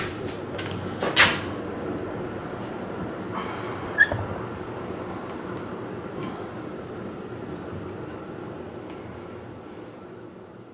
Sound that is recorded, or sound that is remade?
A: recorded